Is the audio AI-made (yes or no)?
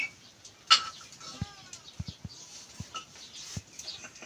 no